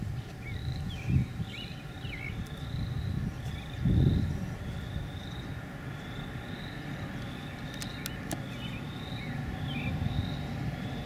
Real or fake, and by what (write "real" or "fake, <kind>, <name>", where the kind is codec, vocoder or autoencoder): real